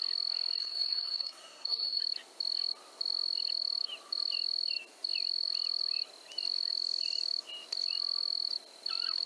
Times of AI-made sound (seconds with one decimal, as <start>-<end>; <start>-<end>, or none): 0.6-2.0